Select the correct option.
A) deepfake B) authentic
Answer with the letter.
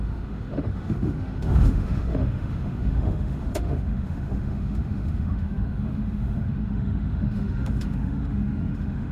A